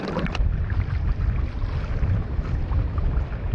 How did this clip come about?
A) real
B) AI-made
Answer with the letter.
B